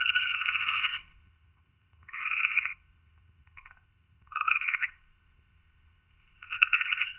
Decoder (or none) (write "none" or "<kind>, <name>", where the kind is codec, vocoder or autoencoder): codec, ZipCodec